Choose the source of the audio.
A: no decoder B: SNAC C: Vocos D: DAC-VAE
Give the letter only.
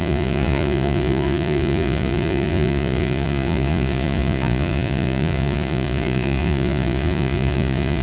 C